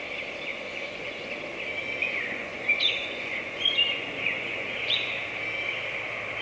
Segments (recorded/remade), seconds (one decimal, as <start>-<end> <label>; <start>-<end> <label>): 0.0-0.5 recorded; 0.5-1.3 remade; 1.3-2.0 recorded; 2.0-5.1 remade; 5.1-6.4 recorded